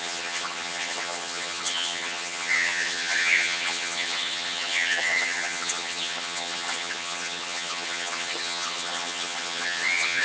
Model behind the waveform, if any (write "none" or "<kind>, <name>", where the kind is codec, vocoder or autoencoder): vocoder, HiFi-GAN